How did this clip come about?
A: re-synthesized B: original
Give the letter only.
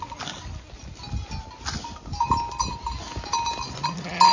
B